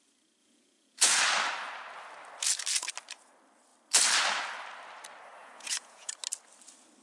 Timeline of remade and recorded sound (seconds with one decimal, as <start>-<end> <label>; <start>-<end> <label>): 0.0-0.4 recorded; 0.4-1.2 remade; 1.2-5.4 recorded; 5.4-6.1 remade; 6.1-7.0 recorded